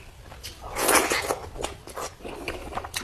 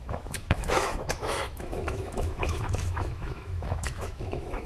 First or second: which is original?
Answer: first